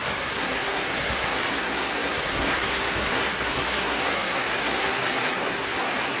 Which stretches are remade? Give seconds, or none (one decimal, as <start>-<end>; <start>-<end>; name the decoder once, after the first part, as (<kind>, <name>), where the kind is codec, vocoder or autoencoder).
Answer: 0.0-6.2 (codec, SNAC)